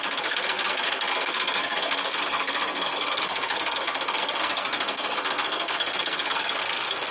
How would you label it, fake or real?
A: fake